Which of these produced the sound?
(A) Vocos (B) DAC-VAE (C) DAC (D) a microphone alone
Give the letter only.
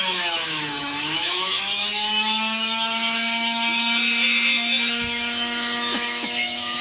B